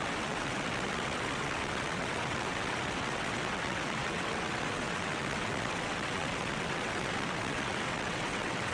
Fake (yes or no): yes